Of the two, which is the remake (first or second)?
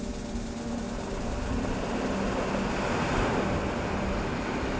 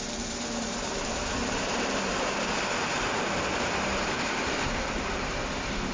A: second